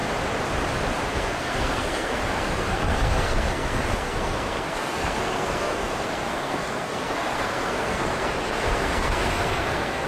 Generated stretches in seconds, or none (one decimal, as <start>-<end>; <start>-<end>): 1.1-10.1